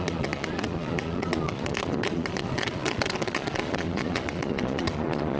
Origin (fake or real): fake